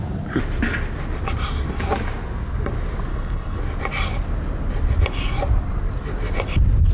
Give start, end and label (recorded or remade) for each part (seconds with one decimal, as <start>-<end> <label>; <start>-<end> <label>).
0.0-3.1 recorded; 3.1-3.6 remade; 3.6-6.9 recorded